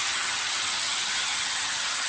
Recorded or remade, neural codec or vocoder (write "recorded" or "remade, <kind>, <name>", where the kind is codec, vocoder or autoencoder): remade, vocoder, HiFi-GAN